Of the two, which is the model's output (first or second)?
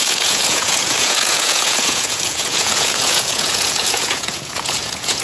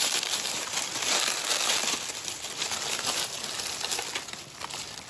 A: first